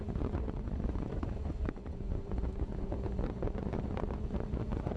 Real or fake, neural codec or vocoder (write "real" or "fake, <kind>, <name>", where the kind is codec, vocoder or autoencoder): fake, vocoder, Vocos